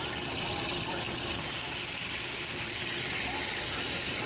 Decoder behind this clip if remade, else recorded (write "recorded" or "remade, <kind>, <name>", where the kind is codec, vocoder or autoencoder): recorded